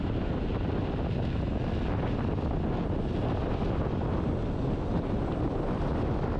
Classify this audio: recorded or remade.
recorded